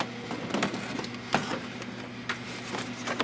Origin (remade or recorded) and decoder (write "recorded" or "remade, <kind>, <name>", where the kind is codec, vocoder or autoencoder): recorded